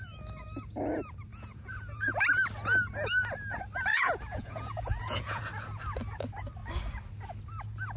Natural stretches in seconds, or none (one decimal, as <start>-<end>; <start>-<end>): 0.0-1.3; 2.1-3.9; 5.4-8.0